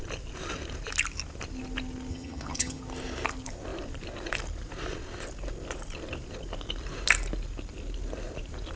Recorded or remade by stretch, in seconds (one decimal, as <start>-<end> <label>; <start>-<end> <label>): 0.0-2.1 recorded; 2.1-2.8 remade; 2.8-8.8 recorded